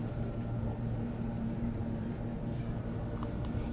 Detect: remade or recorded remade